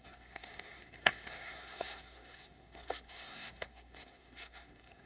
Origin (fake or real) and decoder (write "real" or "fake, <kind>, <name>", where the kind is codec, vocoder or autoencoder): fake, codec, SNAC